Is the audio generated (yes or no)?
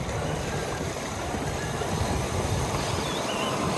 no